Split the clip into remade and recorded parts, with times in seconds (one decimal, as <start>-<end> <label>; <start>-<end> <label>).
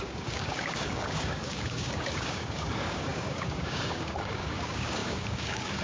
0.0-5.8 remade